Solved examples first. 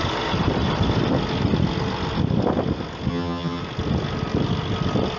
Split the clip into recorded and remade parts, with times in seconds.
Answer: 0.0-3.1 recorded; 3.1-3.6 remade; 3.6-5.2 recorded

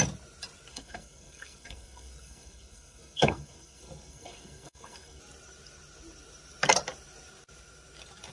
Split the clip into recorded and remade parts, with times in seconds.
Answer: 0.0-0.7 recorded; 0.7-5.2 remade; 5.2-8.3 recorded